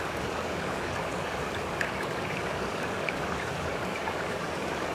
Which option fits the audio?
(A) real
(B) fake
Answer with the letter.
B